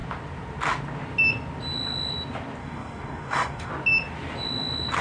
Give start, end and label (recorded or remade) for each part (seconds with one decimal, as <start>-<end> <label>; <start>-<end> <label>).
0.0-2.6 recorded; 2.6-3.7 remade; 3.7-5.0 recorded